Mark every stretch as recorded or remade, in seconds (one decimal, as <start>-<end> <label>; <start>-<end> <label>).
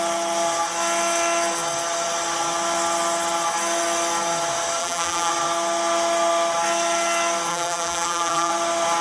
0.0-4.8 recorded; 4.8-5.3 remade; 5.3-7.5 recorded; 7.5-8.5 remade; 8.5-9.0 recorded